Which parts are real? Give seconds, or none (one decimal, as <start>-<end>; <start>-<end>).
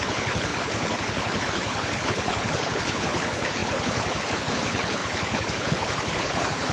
none